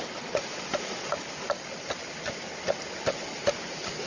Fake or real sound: real